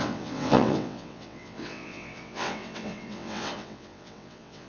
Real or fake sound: fake